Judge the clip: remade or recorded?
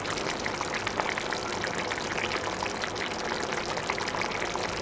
recorded